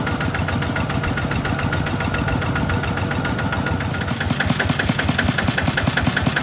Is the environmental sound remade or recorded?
recorded